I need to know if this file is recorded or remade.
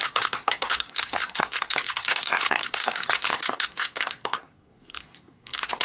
remade